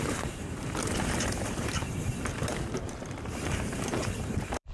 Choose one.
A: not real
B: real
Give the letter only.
A